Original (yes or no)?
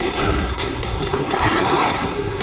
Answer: no